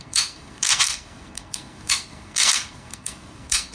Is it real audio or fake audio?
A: fake